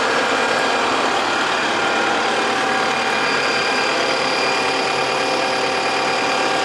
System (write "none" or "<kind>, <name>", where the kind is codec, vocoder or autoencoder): none